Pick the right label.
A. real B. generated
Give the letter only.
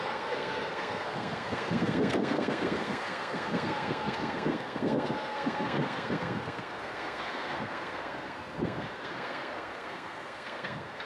B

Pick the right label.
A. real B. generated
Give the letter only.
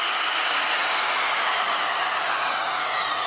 A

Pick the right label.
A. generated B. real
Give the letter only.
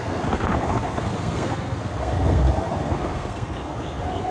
A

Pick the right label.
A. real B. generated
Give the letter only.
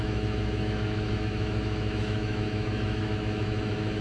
B